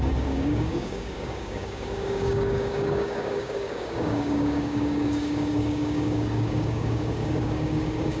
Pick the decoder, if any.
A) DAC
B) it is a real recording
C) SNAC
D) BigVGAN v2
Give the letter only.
A